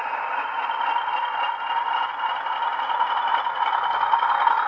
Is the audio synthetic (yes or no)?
no